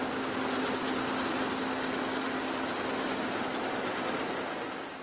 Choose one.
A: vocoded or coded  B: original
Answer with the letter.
B